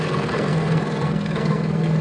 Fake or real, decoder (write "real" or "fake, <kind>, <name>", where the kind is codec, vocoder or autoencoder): fake, codec, SNAC